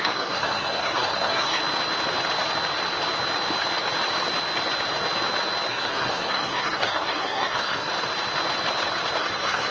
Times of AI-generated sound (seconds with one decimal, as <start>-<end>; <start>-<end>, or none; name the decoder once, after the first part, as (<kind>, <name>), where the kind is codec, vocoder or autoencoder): 0.0-1.6 (codec, SNAC); 5.7-7.9; 9.2-9.7